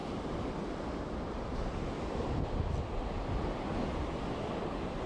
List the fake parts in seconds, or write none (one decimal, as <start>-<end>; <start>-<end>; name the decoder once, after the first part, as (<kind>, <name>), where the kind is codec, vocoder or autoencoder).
none